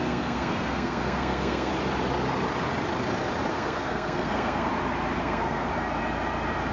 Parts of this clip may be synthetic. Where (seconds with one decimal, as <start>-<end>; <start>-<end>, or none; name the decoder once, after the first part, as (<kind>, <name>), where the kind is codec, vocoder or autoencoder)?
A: 0.0-1.7 (codec, SNAC); 3.5-4.7; 5.2-5.7